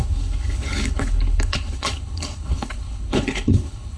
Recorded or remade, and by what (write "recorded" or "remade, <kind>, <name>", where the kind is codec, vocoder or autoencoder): remade, codec, HILCodec